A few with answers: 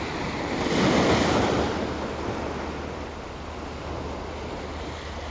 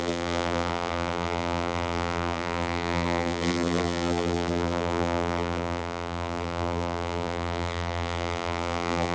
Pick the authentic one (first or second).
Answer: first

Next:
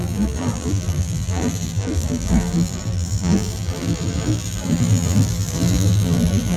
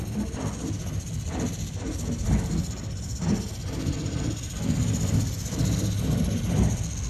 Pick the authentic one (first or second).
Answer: second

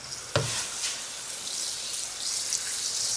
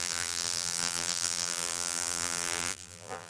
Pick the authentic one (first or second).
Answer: first